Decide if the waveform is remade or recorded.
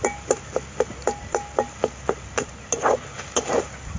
recorded